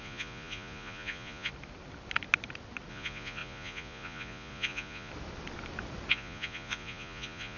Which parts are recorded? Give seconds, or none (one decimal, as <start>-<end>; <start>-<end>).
1.5-2.9; 5.1-6.1